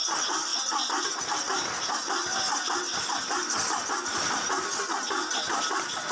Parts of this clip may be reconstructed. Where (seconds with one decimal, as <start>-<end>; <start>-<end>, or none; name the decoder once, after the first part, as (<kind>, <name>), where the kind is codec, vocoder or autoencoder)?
none